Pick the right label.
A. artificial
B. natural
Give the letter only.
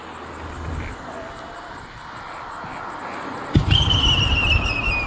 B